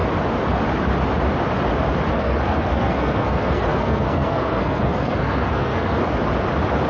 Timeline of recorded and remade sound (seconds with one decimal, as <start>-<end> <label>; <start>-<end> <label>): 0.0-2.1 recorded; 2.1-6.0 remade; 6.0-6.9 recorded

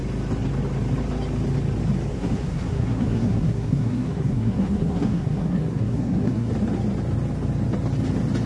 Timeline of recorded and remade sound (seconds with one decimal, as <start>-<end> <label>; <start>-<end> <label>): 0.0-2.1 recorded; 2.1-6.5 remade; 6.5-8.5 recorded

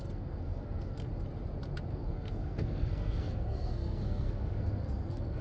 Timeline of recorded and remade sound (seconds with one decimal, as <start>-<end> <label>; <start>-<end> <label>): 0.0-1.1 remade; 1.1-1.9 recorded; 1.9-5.4 remade